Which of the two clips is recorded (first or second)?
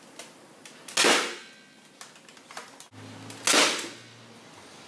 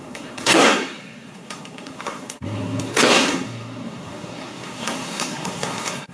first